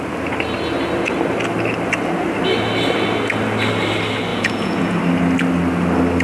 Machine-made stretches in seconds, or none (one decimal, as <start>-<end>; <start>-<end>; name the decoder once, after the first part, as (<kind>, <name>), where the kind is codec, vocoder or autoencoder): 4.3-5.0 (vocoder, Vocos)